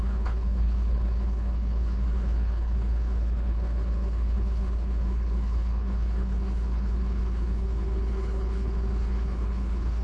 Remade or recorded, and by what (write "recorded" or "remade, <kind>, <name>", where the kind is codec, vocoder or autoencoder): remade, codec, HILCodec